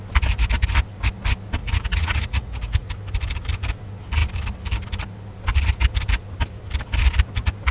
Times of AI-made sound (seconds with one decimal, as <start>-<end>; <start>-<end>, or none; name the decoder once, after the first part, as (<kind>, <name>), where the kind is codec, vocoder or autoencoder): 1.6-2.9 (vocoder, Vocos)